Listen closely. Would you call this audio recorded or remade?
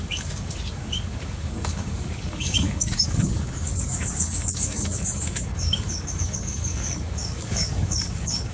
remade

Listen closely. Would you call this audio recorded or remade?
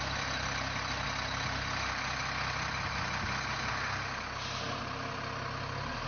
recorded